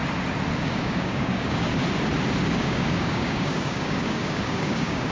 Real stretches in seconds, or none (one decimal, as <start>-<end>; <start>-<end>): 0.0-0.6; 1.7-2.6